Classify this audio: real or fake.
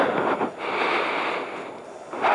real